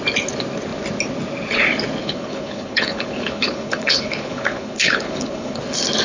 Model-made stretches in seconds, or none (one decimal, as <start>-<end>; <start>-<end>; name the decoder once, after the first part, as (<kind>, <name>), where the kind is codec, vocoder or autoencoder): 2.0-5.6 (codec, HILCodec)